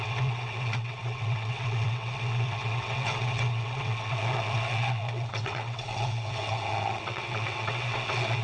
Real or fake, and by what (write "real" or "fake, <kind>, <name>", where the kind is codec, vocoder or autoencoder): fake, vocoder, WaveNeXt